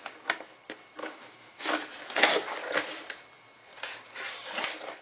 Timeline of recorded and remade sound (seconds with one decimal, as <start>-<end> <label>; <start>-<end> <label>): 0.0-1.0 recorded; 1.0-1.7 remade; 1.7-5.0 recorded